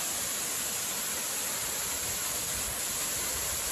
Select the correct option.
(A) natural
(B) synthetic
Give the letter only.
B